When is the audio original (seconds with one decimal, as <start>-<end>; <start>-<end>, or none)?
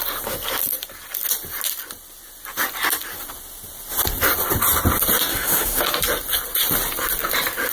0.0-5.3; 5.8-7.7